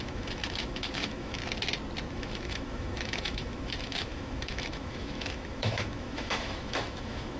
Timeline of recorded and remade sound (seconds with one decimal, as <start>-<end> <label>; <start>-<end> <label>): 0.0-1.4 remade; 1.4-2.1 recorded; 2.1-7.4 remade